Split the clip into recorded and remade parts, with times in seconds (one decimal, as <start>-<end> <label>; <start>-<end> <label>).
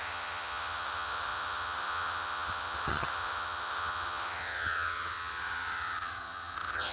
0.0-6.9 remade